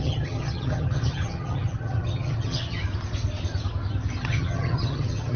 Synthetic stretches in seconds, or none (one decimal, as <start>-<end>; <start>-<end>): 0.0-2.8; 4.2-5.4